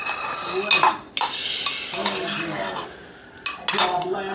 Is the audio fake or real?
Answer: real